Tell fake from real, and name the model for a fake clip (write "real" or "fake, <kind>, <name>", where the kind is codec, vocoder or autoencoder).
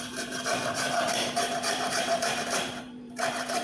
fake, vocoder, BigVGAN v2